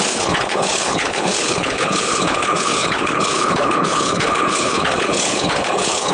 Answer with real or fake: fake